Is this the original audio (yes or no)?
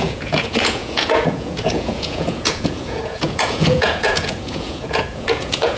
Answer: no